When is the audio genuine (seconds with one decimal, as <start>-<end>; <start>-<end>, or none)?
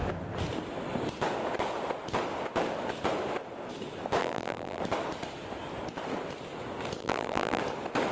0.0-4.2; 4.8-7.0; 7.6-8.1